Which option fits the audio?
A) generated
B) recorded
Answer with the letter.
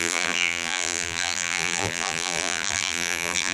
A